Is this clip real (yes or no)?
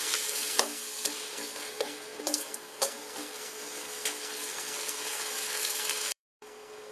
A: no